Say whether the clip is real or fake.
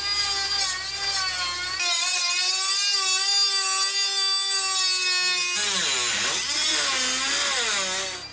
real